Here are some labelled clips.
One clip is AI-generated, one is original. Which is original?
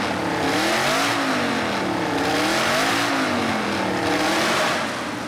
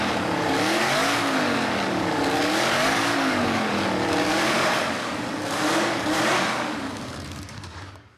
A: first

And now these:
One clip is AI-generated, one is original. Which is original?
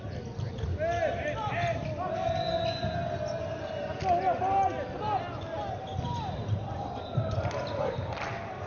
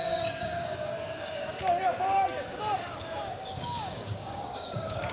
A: first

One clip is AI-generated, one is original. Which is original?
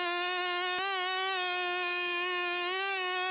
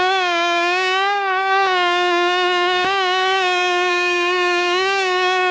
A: first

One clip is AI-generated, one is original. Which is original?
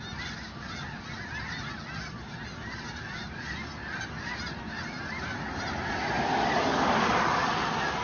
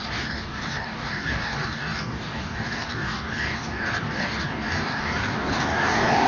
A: first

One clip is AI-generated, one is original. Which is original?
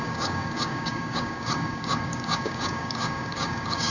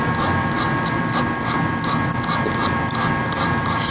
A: second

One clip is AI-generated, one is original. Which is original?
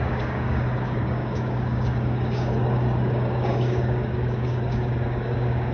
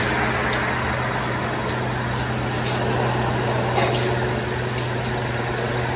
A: second